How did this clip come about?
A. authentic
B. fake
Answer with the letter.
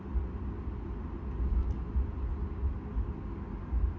A